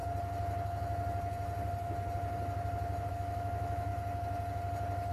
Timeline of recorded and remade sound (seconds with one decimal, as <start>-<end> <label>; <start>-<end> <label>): 0.0-3.1 recorded; 3.1-3.9 remade; 3.9-5.1 recorded